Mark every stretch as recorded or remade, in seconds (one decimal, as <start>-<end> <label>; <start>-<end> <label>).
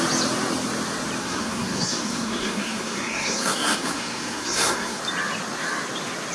0.0-1.2 recorded; 1.2-5.0 remade; 5.0-6.3 recorded